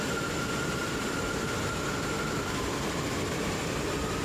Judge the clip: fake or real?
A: real